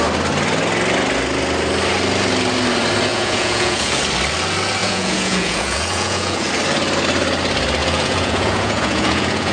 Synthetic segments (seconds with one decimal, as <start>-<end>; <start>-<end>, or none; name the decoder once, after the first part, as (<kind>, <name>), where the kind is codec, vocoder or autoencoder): 3.1-4.0 (vocoder, Vocos); 4.8-6.5; 7.8-9.5